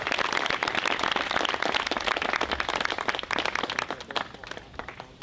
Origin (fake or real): real